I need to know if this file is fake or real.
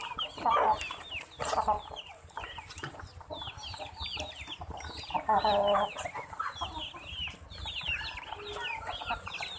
real